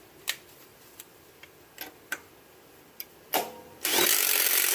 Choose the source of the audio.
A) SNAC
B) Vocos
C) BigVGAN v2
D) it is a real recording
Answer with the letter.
C